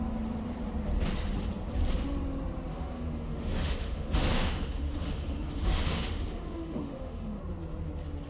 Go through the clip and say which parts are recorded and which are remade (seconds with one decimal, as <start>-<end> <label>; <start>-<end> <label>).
0.0-2.7 recorded; 2.7-7.4 remade; 7.4-8.3 recorded